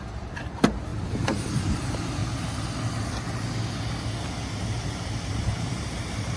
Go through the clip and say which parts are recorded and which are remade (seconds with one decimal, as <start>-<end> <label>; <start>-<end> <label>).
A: 0.0-2.2 remade; 2.2-5.3 recorded; 5.3-6.4 remade